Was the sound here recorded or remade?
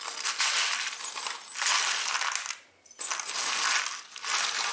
recorded